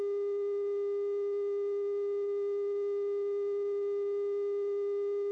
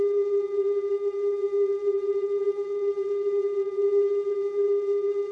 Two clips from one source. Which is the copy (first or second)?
second